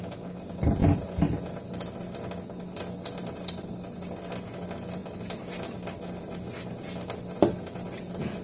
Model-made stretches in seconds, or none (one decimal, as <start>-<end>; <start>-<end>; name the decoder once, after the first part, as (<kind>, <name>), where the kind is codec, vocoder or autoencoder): none